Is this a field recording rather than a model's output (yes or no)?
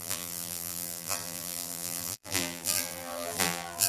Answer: no